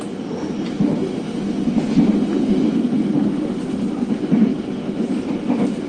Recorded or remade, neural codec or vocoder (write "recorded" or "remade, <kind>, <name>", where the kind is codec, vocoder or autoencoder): recorded